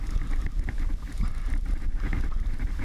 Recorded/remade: recorded